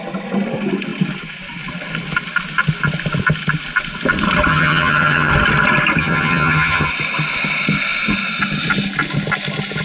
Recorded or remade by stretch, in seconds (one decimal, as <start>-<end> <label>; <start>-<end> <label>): 0.0-4.5 recorded; 4.5-5.3 remade; 5.3-6.0 recorded; 6.0-6.9 remade; 6.9-9.8 recorded